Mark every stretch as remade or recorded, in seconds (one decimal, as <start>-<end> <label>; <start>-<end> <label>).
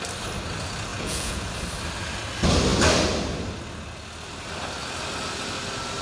0.0-0.9 recorded; 0.9-1.5 remade; 1.5-6.0 recorded